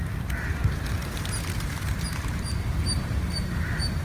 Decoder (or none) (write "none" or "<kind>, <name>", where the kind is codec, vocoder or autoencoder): vocoder, BigVGAN v2